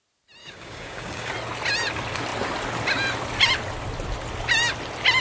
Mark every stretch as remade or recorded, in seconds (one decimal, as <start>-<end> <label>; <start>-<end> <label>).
0.0-0.4 recorded; 0.4-1.3 remade; 1.3-5.2 recorded

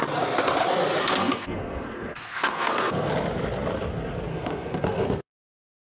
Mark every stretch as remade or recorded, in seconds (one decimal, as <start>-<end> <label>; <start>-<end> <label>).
0.0-1.0 recorded; 1.0-3.1 remade; 3.1-4.3 recorded; 4.3-5.8 remade

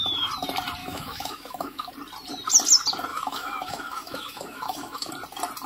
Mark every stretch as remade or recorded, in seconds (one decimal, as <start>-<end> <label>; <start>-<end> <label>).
0.0-0.8 recorded; 0.8-1.9 remade; 1.9-3.1 recorded; 3.1-5.1 remade; 5.1-5.7 recorded

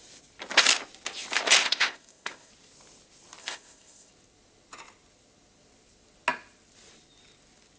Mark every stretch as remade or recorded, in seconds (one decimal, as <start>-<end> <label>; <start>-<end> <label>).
0.0-1.6 recorded; 1.6-2.5 remade; 2.5-3.4 recorded; 3.4-4.1 remade; 4.1-7.8 recorded